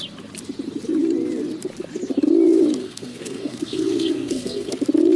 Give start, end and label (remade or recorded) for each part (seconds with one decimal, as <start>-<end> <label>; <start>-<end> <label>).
0.0-2.8 recorded; 2.8-4.7 remade; 4.7-5.2 recorded